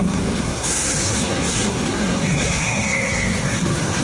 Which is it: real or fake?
fake